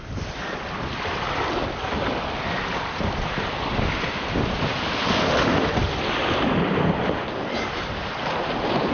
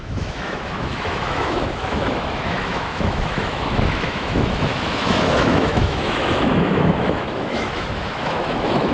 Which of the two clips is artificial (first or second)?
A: second